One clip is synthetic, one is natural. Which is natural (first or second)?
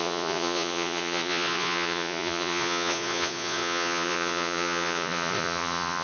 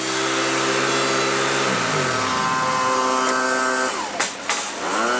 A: second